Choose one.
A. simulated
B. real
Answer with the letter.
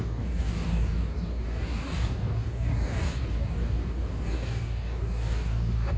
A